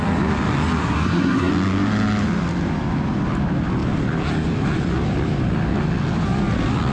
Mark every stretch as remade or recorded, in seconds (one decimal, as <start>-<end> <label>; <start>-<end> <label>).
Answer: 0.0-0.8 recorded; 0.8-1.5 remade; 1.5-6.9 recorded